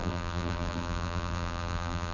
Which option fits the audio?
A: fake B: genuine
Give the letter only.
A